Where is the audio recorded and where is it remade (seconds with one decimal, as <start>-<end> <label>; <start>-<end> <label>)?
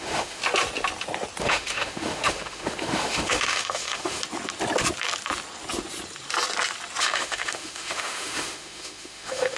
0.0-0.4 remade; 0.4-1.4 recorded; 1.4-4.2 remade; 4.2-7.0 recorded; 7.0-9.6 remade